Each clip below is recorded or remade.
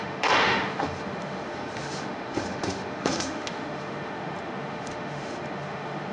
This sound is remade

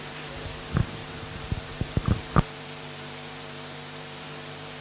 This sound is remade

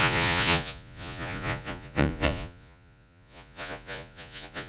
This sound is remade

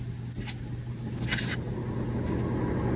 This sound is recorded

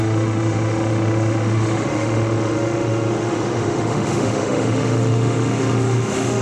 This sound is remade